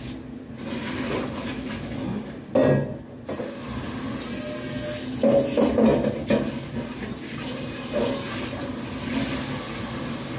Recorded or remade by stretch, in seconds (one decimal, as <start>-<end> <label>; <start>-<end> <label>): 0.0-10.4 recorded